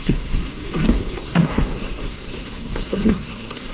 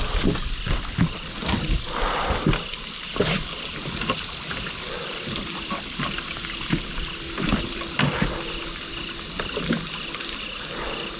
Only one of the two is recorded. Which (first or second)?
second